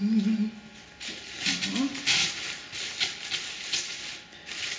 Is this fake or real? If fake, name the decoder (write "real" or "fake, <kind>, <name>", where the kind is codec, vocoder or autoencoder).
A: real